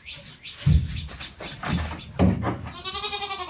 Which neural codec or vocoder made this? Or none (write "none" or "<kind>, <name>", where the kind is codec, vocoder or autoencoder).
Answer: none